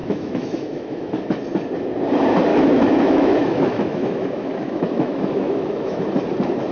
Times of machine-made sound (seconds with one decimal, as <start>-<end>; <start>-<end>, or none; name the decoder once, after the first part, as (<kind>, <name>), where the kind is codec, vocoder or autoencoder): 0.0-1.1 (autoencoder, DAC-VAE); 2.5-6.0